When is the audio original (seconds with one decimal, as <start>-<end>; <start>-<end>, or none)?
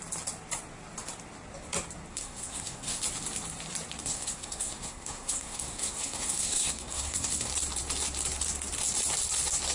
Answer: 0.0-2.1; 3.0-4.0; 7.5-9.7